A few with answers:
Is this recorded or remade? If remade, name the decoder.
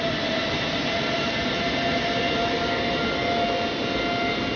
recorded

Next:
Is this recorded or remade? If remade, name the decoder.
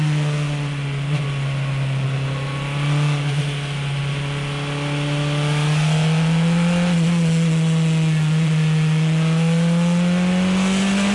recorded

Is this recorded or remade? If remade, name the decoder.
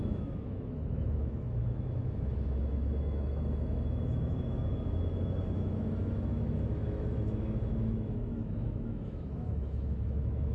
remade, autoencoder, DAC-VAE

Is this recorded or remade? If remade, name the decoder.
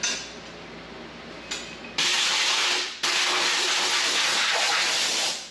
recorded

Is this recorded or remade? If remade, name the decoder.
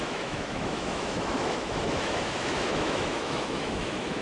remade, autoencoder, DAC-VAE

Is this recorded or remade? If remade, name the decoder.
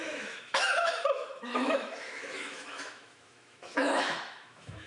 remade, autoencoder, DAC-VAE